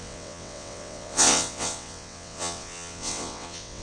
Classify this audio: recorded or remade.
remade